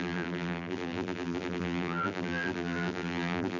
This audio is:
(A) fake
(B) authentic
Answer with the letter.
A